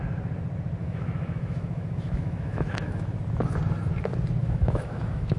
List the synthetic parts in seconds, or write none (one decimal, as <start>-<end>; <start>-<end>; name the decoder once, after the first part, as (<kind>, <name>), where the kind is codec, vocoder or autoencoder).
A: 0.8-3.1 (autoencoder, DAC-VAE); 4.4-5.4